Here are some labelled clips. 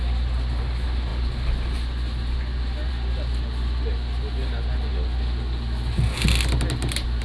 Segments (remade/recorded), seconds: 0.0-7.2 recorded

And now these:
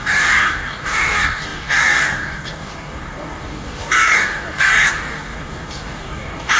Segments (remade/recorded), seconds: 0.0-6.6 remade